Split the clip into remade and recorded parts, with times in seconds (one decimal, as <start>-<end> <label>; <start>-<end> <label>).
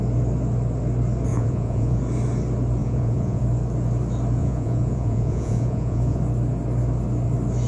0.0-1.3 recorded; 1.3-2.0 remade; 2.0-2.8 recorded; 2.8-3.4 remade; 3.4-4.4 recorded; 4.4-6.2 remade; 6.2-7.7 recorded